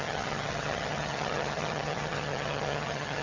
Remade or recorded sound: remade